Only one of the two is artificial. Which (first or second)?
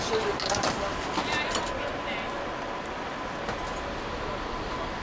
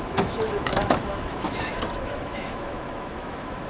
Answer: second